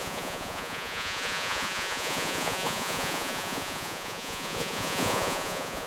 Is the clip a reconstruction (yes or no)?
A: yes